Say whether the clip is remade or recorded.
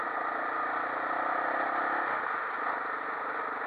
recorded